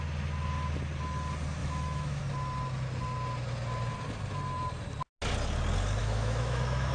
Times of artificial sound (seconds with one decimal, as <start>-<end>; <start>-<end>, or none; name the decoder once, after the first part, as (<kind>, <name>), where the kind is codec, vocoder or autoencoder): 1.6-2.2 (autoencoder, DAC-VAE); 6.0-6.9